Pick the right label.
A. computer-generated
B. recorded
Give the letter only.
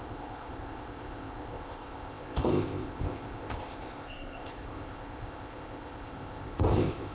A